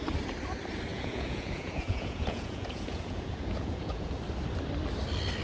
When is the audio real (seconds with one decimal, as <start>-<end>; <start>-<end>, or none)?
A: 0.0-0.9; 4.1-5.4